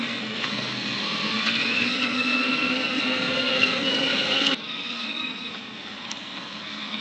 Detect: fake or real fake